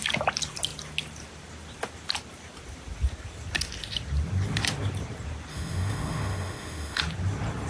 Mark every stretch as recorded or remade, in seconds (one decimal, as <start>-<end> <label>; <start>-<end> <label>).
0.0-5.5 recorded; 5.5-7.0 remade; 7.0-7.7 recorded